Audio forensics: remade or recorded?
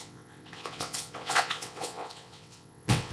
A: remade